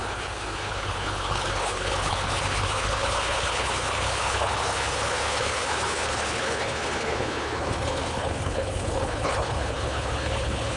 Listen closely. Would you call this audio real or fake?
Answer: fake